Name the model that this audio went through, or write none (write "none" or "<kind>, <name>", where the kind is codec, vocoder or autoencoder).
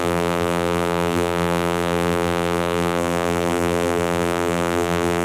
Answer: vocoder, BigVGAN v2